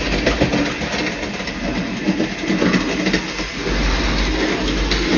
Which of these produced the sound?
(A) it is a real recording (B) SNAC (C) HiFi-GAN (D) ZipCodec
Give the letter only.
A